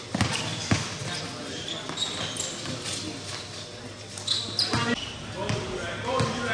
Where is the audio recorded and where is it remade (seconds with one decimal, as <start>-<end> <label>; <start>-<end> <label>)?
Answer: 0.0-6.5 recorded

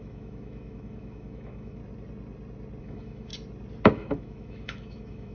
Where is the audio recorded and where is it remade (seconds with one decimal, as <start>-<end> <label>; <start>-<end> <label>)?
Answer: 0.0-1.8 remade; 1.8-2.8 recorded; 2.8-3.3 remade; 3.3-3.9 recorded; 3.9-5.3 remade

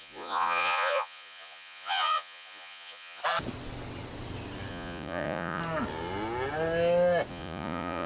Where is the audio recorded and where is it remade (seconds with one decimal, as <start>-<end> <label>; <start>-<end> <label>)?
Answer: 0.0-3.2 remade; 3.2-4.7 recorded; 4.7-5.6 remade; 5.6-7.3 recorded; 7.3-8.1 remade